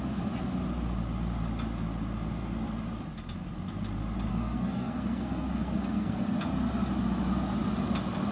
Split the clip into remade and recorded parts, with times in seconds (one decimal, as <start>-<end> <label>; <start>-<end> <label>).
0.0-4.3 recorded; 4.3-6.3 remade; 6.3-8.3 recorded

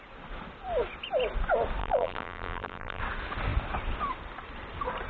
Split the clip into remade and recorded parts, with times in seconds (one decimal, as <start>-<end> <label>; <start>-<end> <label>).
0.0-1.8 recorded; 1.8-3.0 remade; 3.0-5.1 recorded

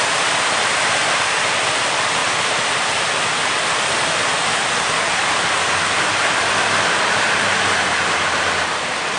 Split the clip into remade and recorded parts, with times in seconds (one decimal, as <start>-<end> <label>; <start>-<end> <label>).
0.0-4.4 remade; 4.4-5.1 recorded; 5.1-9.2 remade

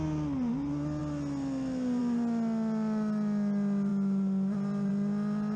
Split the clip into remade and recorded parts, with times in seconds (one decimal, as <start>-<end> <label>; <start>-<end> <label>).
0.0-5.6 recorded

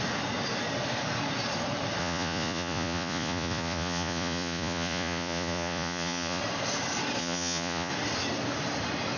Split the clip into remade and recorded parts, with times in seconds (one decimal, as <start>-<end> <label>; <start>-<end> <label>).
0.0-2.0 recorded; 2.0-6.4 remade; 6.4-7.2 recorded; 7.2-7.9 remade; 7.9-9.2 recorded

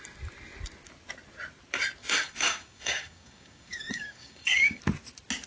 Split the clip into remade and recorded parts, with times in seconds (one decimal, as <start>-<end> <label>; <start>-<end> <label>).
0.0-2.0 recorded; 2.0-4.8 remade; 4.8-5.5 recorded